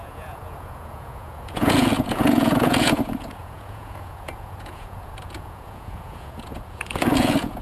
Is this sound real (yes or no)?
no